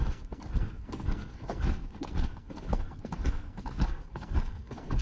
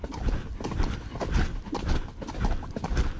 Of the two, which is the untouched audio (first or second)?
second